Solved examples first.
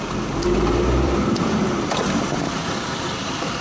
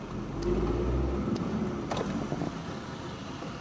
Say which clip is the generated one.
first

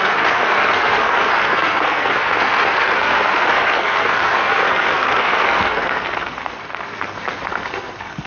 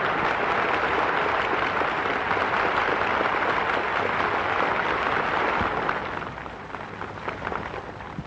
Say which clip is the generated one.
first